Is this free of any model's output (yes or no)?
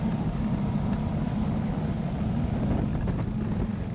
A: yes